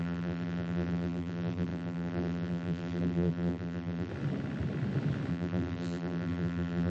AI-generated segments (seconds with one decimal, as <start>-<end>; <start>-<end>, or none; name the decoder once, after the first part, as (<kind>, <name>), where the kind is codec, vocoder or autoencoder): 0.0-4.1 (vocoder, BigVGAN v2); 5.3-6.9

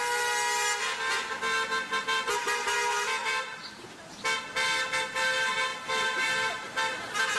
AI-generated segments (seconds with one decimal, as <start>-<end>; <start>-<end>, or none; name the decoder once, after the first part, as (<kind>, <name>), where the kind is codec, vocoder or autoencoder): 3.2-3.8 (vocoder, BigVGAN v2)

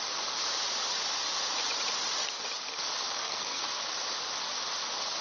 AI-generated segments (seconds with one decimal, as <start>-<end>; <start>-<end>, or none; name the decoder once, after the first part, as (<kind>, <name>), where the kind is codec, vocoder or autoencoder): 3.2-3.8 (codec, SNAC)

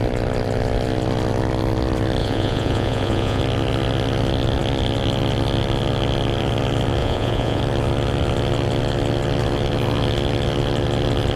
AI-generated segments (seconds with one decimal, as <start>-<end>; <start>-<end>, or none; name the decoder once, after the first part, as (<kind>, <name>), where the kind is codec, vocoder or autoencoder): 2.2-3.4 (vocoder, Vocos); 7.0-7.6

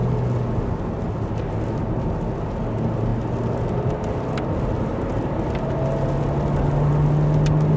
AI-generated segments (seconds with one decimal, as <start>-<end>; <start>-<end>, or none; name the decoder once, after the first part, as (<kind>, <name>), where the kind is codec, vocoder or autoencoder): none

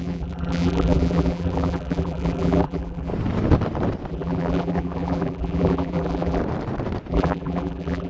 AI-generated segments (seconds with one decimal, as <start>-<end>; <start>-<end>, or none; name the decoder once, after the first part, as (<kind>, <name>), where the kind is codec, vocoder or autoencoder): 0.0-3.1 (vocoder, BigVGAN v2); 4.1-6.4; 7.1-8.1

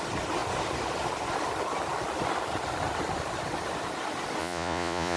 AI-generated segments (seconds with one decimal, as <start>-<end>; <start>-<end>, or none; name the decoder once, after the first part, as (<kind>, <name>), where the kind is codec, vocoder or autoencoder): 4.4-5.2 (vocoder, Vocos)

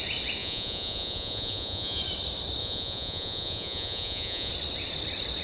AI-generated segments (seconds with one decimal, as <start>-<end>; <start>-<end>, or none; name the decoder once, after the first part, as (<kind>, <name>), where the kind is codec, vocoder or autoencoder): 0.4-2.0 (vocoder, Vocos); 2.6-4.5